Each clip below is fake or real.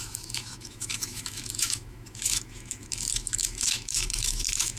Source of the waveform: fake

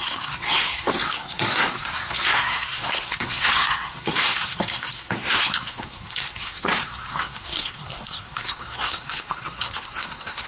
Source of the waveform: fake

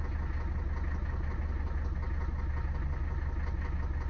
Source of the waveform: real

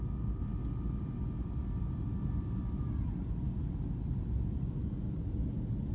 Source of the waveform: real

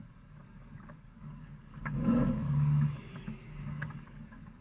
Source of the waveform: fake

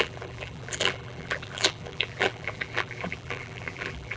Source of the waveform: fake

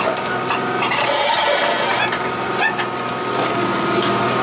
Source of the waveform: real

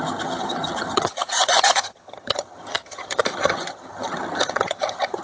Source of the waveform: fake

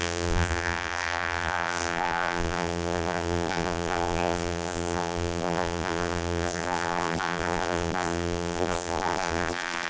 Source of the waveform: fake